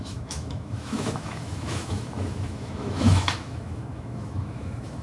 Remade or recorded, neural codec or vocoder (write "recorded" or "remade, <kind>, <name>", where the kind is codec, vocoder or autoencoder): remade, autoencoder, DAC-VAE